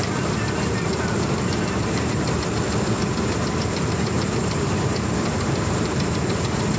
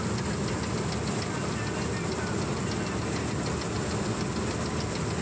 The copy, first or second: first